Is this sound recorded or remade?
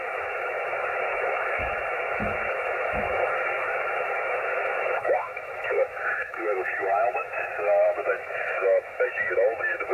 remade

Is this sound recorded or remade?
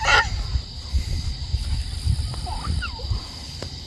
recorded